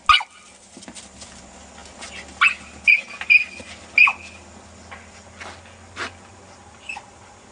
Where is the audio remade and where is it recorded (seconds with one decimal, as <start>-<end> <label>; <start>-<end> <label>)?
0.0-7.5 recorded

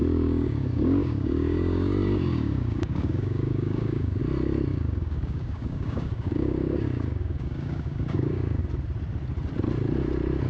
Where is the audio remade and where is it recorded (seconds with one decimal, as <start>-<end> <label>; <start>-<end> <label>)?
0.0-4.2 remade; 4.2-4.7 recorded; 4.7-8.6 remade; 8.6-10.5 recorded

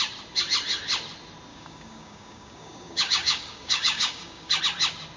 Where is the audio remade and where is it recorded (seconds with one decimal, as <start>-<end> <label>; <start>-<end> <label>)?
0.0-1.5 recorded; 1.5-4.6 remade; 4.6-5.2 recorded

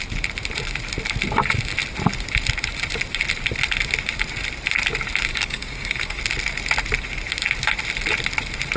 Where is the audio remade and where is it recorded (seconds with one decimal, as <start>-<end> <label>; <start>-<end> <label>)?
0.0-5.3 recorded; 5.3-6.2 remade; 6.2-8.8 recorded

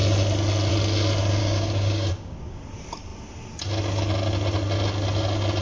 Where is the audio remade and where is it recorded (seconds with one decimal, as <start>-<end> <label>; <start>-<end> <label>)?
0.0-1.4 recorded; 1.4-2.6 remade; 2.6-5.6 recorded

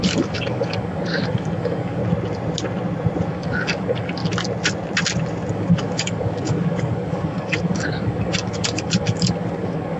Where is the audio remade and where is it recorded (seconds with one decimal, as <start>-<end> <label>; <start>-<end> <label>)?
0.0-2.0 remade; 2.0-3.3 recorded; 3.3-4.2 remade; 4.2-5.5 recorded; 5.5-10.0 remade